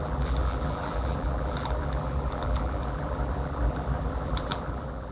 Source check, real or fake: fake